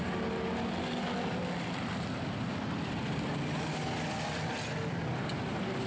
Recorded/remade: recorded